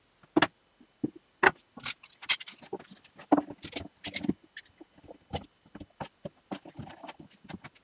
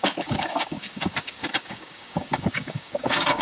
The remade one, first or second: second